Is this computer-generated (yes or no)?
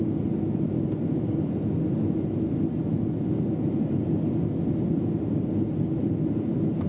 no